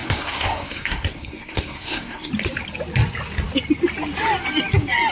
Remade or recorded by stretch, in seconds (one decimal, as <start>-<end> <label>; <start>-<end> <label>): 0.0-2.3 remade; 2.3-5.1 recorded